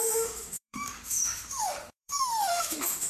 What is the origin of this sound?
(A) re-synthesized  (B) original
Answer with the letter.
A